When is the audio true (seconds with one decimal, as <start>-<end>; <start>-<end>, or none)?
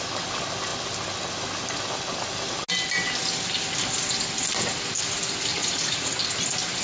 0.0-5.5; 6.2-6.8